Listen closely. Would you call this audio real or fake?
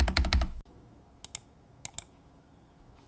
fake